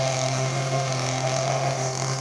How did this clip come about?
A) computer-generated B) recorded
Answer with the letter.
A